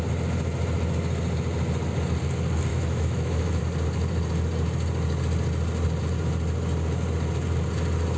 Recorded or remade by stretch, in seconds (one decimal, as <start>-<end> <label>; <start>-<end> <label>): 0.0-2.7 recorded; 2.7-3.6 remade; 3.6-8.2 recorded

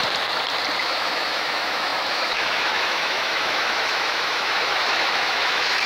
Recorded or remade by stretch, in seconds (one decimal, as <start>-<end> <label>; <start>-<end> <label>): 0.0-0.8 recorded; 0.8-5.9 remade